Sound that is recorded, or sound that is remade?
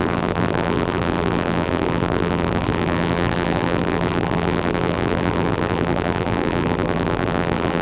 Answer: remade